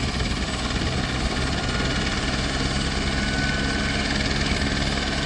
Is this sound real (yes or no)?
yes